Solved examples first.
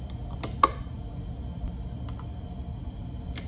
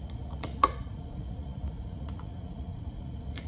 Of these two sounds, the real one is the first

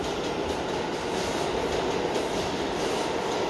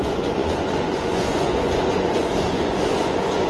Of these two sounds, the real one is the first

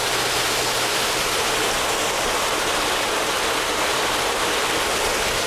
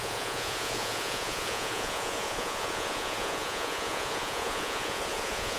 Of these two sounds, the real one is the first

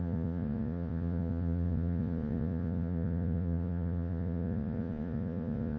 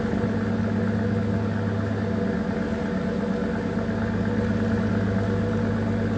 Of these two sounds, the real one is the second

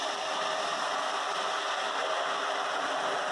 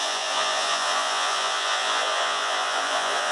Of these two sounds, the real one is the first